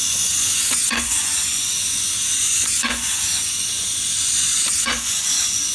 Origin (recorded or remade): remade